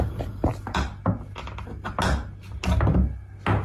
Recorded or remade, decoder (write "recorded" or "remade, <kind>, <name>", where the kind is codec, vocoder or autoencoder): recorded